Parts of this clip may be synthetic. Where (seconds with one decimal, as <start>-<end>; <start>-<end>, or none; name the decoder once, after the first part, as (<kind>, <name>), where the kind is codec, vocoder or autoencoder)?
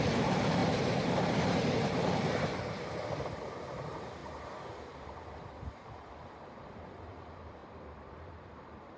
0.0-4.2 (vocoder, BigVGAN v2); 4.9-9.0